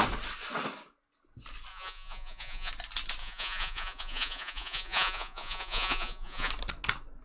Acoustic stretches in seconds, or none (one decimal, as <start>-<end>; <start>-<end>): 0.0-1.7; 2.7-3.2; 6.5-7.2